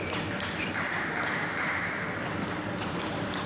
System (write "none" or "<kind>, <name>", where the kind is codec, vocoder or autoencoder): none